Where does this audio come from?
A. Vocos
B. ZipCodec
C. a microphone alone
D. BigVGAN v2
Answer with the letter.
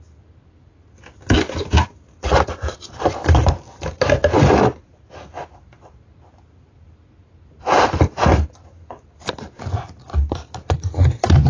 C